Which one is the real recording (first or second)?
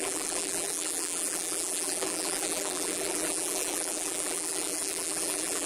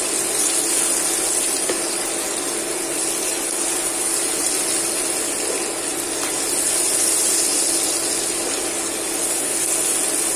second